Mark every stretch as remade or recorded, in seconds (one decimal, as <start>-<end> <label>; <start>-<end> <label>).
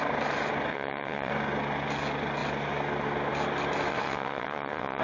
0.0-0.7 recorded; 0.7-1.3 remade; 1.3-3.9 recorded; 3.9-5.0 remade